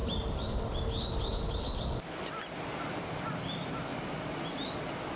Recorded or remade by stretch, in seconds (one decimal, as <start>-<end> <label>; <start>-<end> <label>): 0.0-5.2 recorded